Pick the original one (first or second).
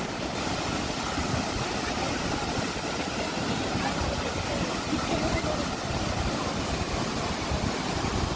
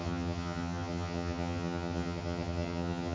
first